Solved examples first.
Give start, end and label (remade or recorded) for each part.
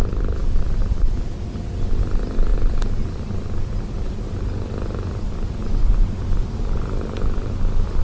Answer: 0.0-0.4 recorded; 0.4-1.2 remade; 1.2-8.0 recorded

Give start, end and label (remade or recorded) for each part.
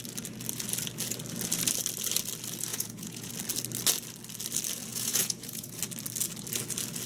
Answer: 0.0-2.7 recorded; 2.7-3.3 remade; 3.3-4.9 recorded; 4.9-5.8 remade; 5.8-7.1 recorded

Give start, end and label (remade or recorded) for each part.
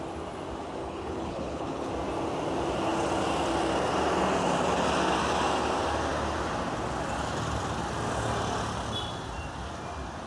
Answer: 0.0-0.8 recorded; 0.8-1.9 remade; 1.9-10.3 recorded